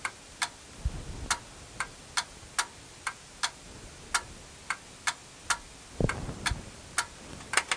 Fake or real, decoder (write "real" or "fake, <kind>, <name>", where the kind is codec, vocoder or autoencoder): real